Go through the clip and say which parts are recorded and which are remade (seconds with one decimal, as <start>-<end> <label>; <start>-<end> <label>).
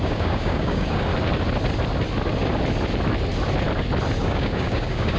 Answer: 0.0-1.1 remade; 1.1-4.2 recorded; 4.2-5.2 remade